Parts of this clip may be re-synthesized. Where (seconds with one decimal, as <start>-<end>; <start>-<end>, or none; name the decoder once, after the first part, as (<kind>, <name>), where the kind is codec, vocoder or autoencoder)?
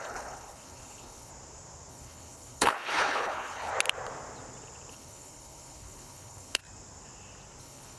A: 0.0-1.3 (codec, HILCodec); 1.9-3.7; 4.9-6.6; 7.6-8.0